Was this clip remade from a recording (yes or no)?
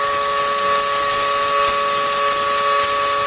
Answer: no